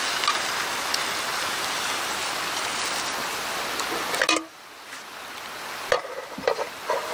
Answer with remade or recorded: recorded